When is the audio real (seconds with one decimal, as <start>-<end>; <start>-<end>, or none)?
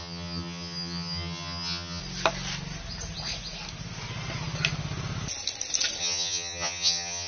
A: 2.0-6.0